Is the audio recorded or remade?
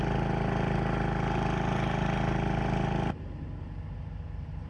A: recorded